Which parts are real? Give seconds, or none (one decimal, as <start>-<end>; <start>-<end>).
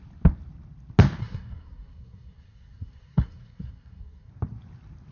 0.0-1.2; 4.3-5.1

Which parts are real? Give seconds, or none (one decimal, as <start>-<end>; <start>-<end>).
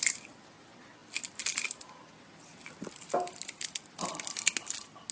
0.0-5.1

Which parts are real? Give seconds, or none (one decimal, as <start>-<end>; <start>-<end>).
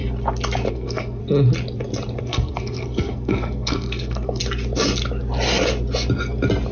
0.0-0.7; 1.2-2.2; 4.4-6.7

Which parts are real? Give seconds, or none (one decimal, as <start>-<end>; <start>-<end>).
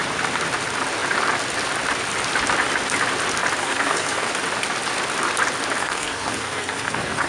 0.0-3.6; 4.3-5.8